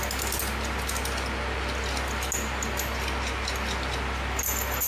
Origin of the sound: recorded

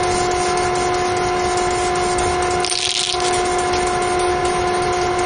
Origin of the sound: recorded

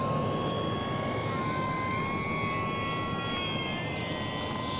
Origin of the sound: recorded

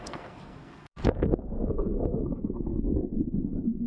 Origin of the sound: remade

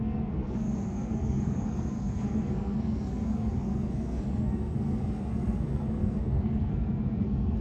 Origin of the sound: remade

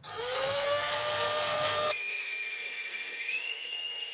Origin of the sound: remade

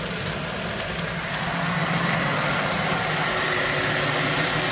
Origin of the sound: recorded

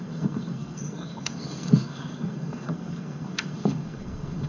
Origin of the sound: remade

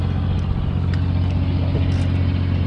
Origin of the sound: recorded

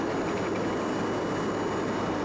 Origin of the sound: recorded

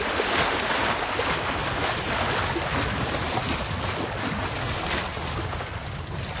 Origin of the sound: recorded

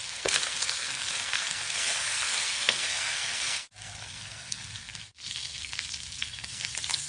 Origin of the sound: remade